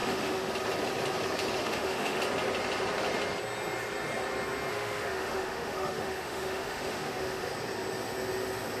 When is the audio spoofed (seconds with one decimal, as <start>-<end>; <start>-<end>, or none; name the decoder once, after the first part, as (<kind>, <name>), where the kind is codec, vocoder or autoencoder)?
0.0-0.5 (autoencoder, DAC-VAE); 1.6-2.2; 4.7-7.5